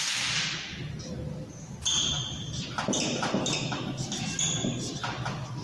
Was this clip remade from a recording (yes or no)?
no